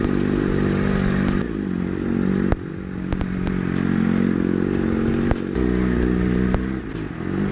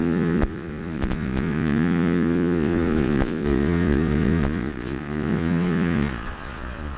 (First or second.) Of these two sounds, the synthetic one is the second